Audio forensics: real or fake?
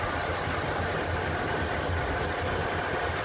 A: real